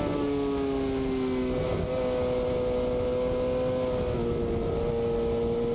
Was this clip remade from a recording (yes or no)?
no